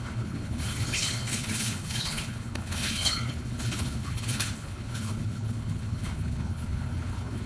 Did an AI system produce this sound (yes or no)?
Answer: yes